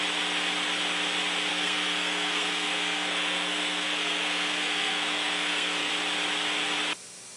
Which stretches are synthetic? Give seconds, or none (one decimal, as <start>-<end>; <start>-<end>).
1.5-5.9